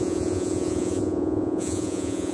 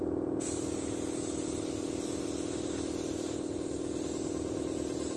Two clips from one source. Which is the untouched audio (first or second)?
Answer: second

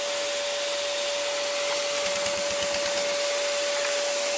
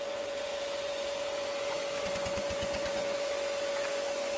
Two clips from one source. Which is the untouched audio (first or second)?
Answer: first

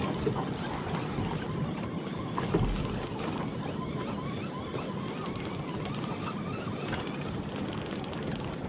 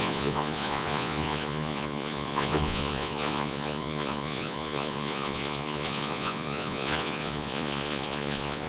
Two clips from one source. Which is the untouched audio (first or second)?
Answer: first